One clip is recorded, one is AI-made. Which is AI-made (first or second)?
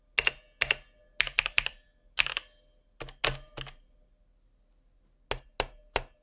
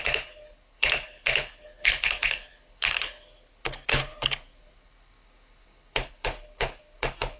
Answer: second